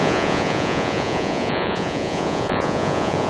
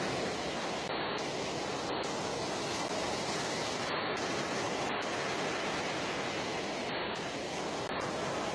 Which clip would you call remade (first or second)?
first